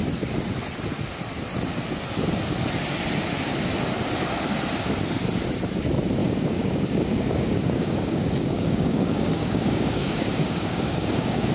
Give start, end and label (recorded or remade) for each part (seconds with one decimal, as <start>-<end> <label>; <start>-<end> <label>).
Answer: 0.0-6.2 recorded; 6.2-11.5 remade